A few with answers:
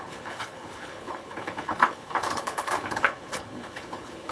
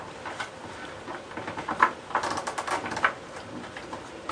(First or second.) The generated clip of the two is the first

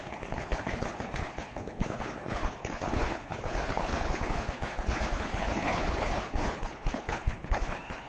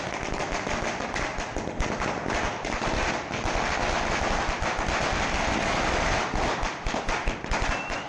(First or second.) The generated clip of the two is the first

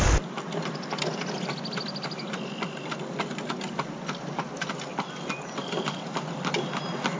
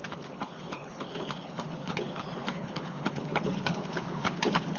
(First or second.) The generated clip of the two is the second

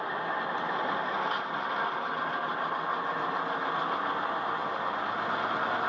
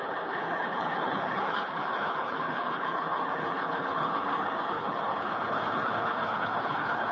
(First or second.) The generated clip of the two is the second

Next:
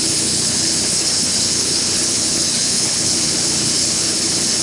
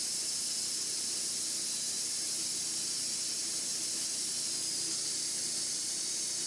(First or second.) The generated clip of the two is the first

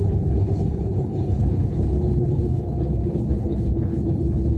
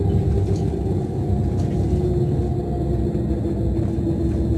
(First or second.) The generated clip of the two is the first